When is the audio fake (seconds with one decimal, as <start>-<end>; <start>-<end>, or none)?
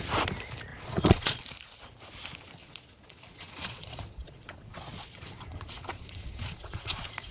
0.7-1.4; 2.6-7.3